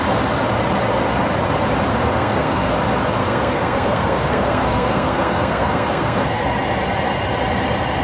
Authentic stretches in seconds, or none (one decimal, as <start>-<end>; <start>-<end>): 0.0-1.9; 2.7-3.2; 6.4-8.0